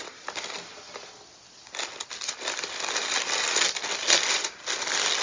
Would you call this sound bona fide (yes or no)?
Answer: yes